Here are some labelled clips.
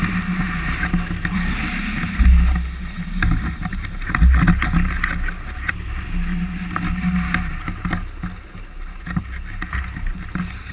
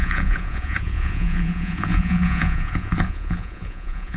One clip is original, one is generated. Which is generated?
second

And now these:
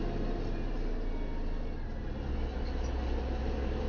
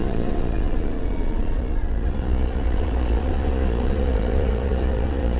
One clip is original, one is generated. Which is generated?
second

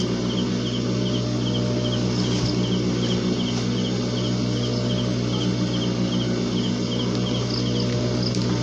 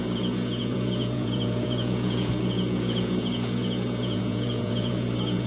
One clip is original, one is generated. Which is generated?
second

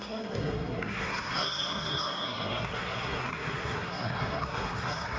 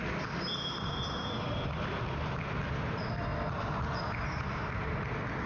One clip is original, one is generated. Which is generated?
first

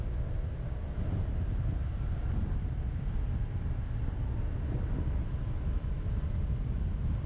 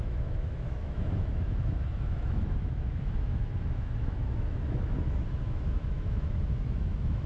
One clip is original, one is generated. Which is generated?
second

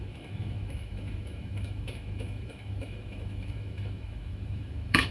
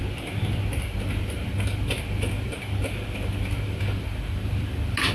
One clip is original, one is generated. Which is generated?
first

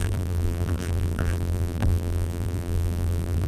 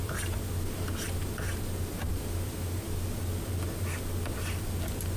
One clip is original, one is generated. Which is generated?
first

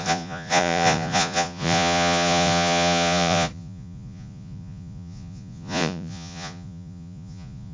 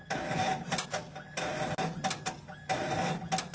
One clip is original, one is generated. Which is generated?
first